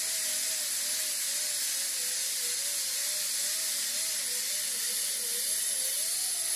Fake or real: real